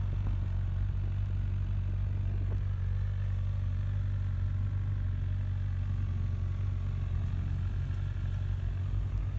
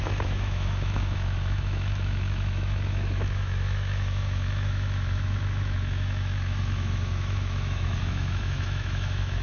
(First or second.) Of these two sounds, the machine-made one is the second